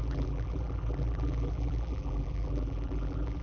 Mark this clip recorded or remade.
remade